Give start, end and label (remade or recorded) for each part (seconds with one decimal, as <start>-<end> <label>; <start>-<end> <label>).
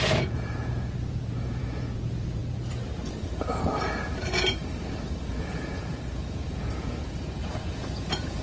0.0-2.4 remade; 2.4-5.4 recorded; 5.4-8.4 remade